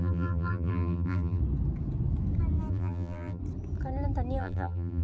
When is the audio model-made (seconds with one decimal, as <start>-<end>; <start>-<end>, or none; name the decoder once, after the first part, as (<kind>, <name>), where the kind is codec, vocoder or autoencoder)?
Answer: 0.0-1.4 (vocoder, BigVGAN v2); 2.7-3.4; 4.4-5.0